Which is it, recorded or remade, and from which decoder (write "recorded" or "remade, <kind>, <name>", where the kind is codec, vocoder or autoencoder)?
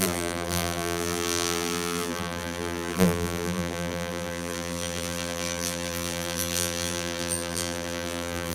remade, vocoder, BigVGAN v2